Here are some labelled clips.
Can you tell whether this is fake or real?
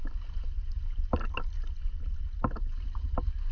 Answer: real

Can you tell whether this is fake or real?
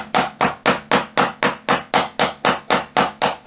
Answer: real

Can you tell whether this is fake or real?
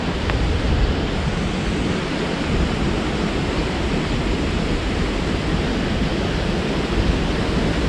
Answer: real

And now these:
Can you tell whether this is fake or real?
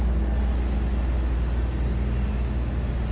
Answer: real